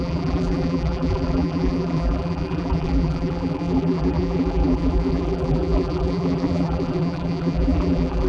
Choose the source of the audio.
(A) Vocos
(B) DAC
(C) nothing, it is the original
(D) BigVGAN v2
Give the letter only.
D